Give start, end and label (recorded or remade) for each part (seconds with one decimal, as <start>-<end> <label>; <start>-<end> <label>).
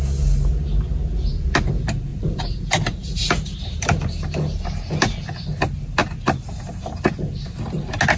0.0-2.1 recorded; 2.1-4.0 remade; 4.0-8.2 recorded